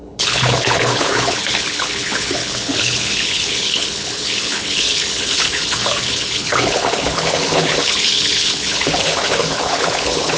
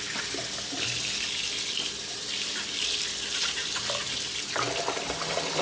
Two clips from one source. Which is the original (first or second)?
second